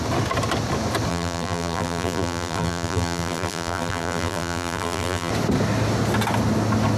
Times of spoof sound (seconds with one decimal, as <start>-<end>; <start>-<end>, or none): 1.1-5.3